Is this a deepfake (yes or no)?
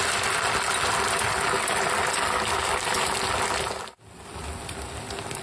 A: no